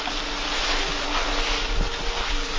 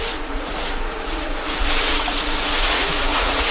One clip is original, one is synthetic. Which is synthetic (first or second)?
second